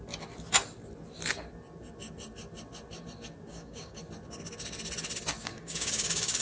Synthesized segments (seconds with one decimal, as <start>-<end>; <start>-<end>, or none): 3.5-4.0; 5.4-6.4